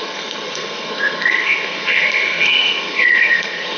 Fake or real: fake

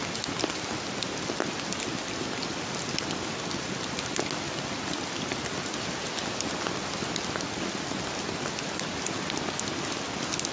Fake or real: real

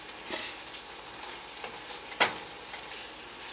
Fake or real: real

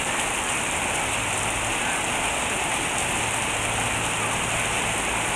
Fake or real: real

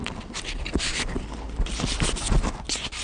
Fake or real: real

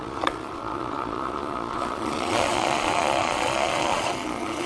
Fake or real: fake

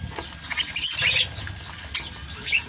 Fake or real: real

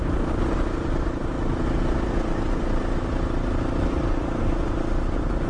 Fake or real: real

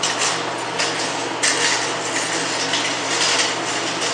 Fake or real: real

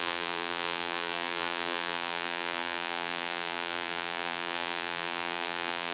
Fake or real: fake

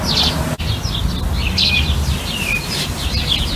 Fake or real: real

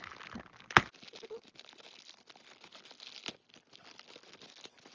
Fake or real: real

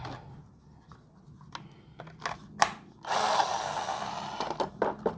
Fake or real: real